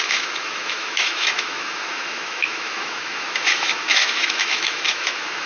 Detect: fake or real fake